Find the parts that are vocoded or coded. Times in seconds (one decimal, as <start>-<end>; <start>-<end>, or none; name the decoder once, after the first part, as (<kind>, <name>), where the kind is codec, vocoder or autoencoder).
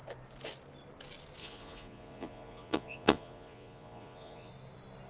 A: 1.4-4.5 (vocoder, Vocos)